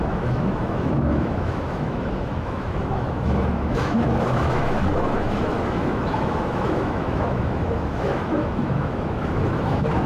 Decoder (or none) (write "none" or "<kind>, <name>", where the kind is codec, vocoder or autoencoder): autoencoder, DAC-VAE